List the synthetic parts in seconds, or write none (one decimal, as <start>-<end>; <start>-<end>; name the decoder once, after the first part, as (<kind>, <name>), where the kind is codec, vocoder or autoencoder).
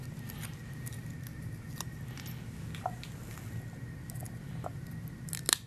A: none